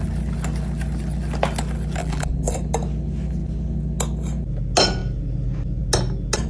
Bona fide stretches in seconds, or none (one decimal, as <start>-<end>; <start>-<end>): 0.0-2.0; 2.5-6.5